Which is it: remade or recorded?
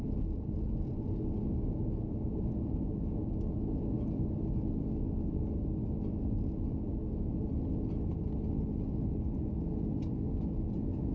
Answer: recorded